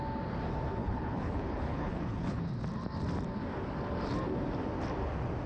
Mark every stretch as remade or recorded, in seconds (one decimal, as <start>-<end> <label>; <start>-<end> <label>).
0.0-0.8 recorded; 0.8-2.4 remade; 2.4-5.5 recorded